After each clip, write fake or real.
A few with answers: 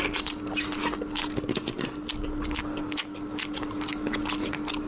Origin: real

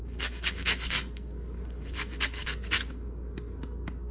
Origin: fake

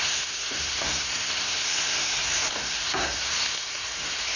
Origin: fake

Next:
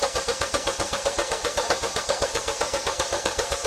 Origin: fake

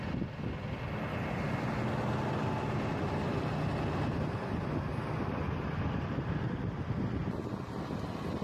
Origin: real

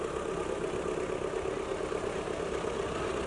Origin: real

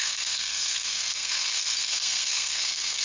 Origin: fake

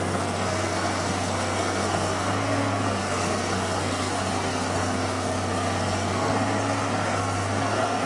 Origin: fake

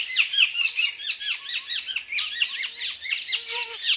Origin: real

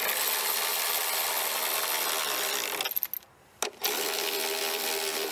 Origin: real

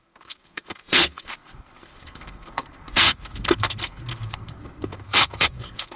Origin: fake